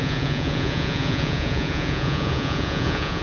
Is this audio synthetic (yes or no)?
yes